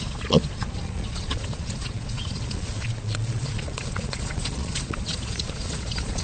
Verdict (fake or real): fake